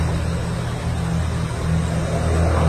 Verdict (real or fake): real